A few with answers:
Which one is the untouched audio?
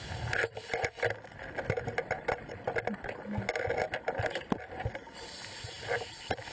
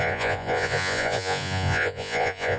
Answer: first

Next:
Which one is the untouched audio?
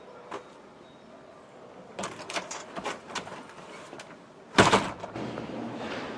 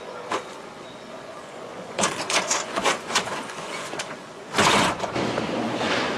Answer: first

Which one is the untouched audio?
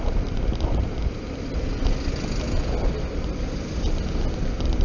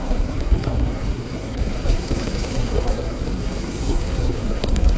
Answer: first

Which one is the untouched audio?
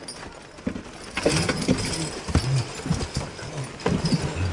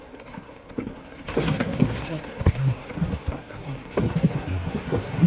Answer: first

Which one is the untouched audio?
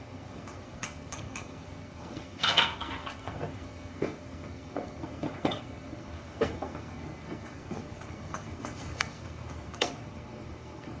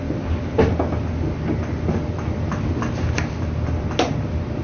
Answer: second